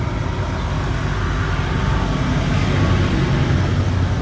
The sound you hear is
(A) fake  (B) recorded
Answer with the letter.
B